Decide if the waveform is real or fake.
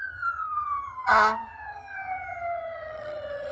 fake